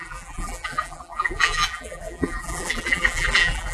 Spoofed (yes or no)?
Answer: yes